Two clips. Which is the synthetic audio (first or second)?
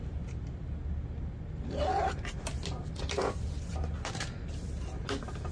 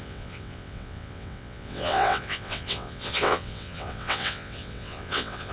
second